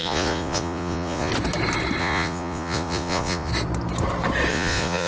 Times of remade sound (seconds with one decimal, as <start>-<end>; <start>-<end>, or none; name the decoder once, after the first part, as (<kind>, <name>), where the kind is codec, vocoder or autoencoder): 0.0-1.3 (vocoder, Vocos); 2.0-3.5; 4.5-5.1